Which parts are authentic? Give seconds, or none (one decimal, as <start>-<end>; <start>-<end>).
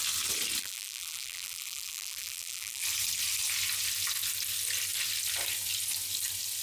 0.0-0.6; 2.8-6.6